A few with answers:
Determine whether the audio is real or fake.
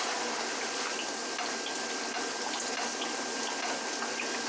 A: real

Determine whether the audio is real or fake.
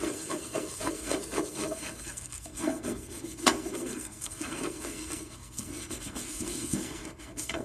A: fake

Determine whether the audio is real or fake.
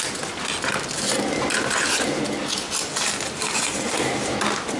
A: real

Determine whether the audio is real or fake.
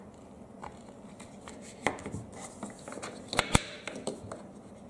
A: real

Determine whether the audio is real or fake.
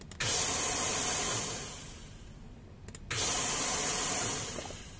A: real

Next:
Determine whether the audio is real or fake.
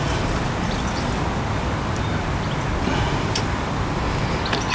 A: real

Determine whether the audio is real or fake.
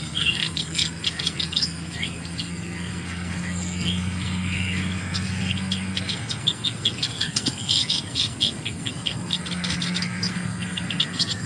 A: fake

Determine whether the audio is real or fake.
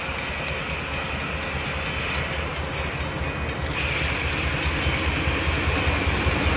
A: real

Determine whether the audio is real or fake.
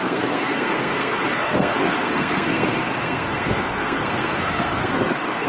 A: fake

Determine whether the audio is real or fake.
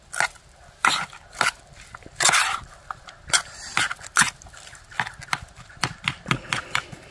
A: real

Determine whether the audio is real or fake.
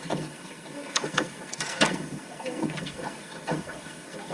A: fake